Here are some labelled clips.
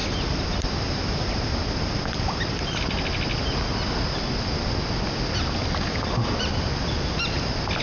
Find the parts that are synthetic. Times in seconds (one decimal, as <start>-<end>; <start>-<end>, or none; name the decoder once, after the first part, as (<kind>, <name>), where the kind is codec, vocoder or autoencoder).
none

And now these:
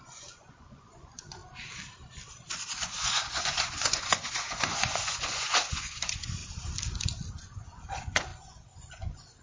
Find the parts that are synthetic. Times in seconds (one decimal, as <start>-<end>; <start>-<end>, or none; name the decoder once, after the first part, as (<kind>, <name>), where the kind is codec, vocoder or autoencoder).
0.0-1.4 (vocoder, Vocos); 2.8-6.4; 7.3-9.4

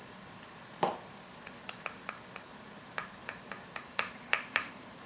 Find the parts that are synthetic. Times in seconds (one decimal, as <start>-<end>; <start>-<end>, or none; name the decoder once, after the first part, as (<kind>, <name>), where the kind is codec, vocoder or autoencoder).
3.2-5.1 (vocoder, BigVGAN v2)

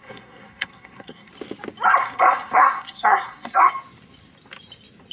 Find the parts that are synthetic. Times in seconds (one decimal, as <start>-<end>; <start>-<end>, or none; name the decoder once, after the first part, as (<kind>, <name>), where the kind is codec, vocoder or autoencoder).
0.0-1.3 (codec, SNAC); 2.0-3.7

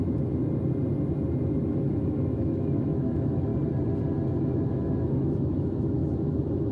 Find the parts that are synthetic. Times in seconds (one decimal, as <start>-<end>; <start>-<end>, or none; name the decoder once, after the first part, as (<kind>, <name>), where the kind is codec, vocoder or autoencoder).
0.0-0.4 (autoencoder, DAC-VAE); 1.4-3.5; 4.3-6.7

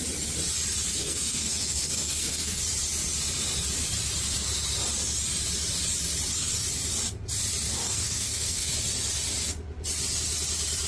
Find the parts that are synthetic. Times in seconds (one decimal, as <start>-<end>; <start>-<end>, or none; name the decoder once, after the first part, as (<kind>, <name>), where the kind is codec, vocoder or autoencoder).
0.9-2.6 (codec, SNAC); 7.8-8.7